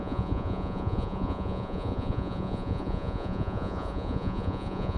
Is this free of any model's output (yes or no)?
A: no